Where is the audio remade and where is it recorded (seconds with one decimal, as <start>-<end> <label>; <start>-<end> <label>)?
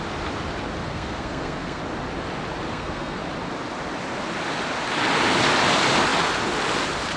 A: 0.0-0.8 recorded; 0.8-1.8 remade; 1.8-2.7 recorded; 2.7-3.2 remade; 3.2-7.2 recorded